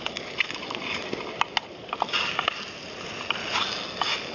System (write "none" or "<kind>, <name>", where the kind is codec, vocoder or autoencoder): none